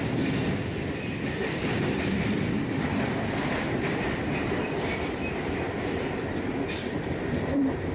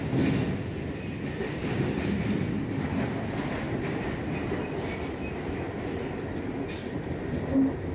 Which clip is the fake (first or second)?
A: first